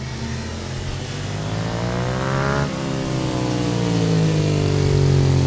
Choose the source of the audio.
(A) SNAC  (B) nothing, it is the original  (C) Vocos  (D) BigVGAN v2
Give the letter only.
B